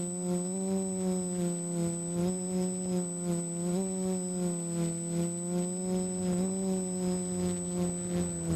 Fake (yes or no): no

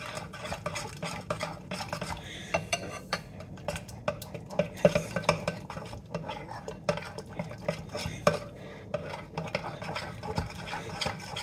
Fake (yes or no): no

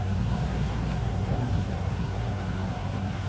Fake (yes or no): yes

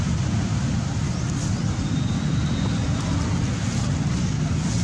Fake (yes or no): no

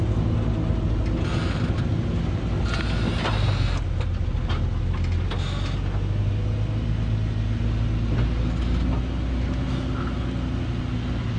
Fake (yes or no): no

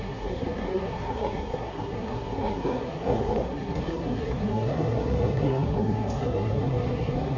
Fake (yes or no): yes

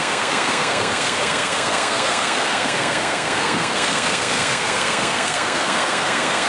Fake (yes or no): yes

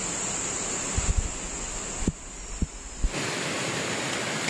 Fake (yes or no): no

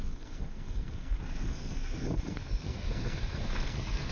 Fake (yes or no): yes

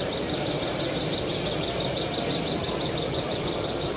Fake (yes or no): no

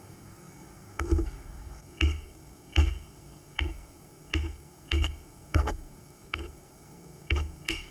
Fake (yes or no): yes